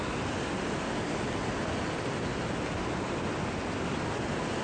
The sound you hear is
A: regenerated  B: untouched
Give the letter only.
B